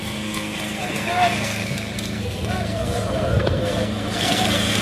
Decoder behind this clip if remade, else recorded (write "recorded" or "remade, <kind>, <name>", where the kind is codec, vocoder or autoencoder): remade, codec, SNAC